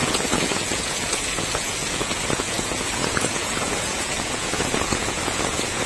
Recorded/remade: remade